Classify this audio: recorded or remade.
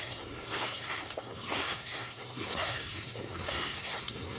remade